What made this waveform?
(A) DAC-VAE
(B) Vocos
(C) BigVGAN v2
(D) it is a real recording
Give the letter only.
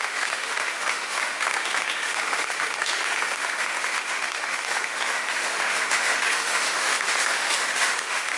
A